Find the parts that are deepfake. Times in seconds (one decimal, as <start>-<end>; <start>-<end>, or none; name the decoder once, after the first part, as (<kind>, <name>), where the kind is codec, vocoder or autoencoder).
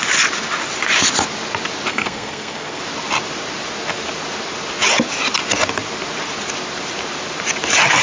1.9-2.8 (codec, SNAC)